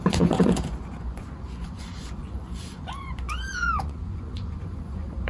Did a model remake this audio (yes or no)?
yes